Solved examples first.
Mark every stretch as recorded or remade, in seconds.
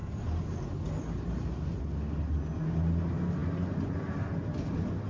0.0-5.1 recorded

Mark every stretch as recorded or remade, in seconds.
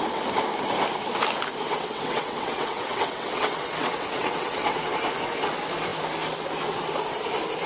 0.0-1.7 recorded; 1.7-4.9 remade; 4.9-7.7 recorded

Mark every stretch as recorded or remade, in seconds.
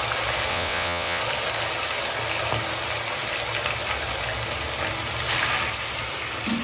0.0-0.5 recorded; 0.5-1.2 remade; 1.2-6.6 recorded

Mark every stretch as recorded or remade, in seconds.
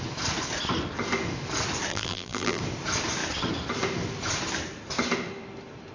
0.0-1.9 recorded; 1.9-2.6 remade; 2.6-5.9 recorded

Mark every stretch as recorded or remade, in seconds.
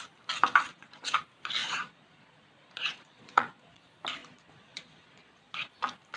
0.0-0.7 recorded; 0.7-1.2 remade; 1.2-1.6 recorded; 1.6-3.8 remade; 3.8-4.2 recorded; 4.2-5.7 remade; 5.7-6.2 recorded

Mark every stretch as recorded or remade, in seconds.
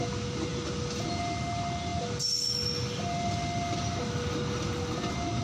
0.0-5.4 recorded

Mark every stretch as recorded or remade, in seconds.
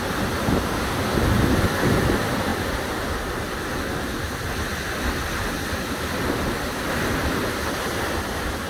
0.0-8.7 recorded